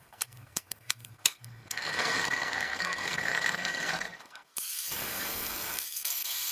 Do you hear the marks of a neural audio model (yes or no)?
yes